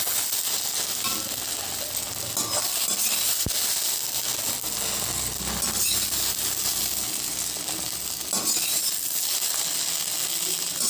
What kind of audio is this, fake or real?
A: real